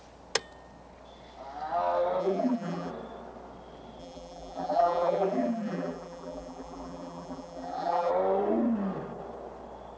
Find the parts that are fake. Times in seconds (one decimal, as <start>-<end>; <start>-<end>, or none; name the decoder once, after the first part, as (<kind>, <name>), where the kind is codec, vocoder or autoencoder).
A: 2.2-2.9 (vocoder, BigVGAN v2); 4.0-8.1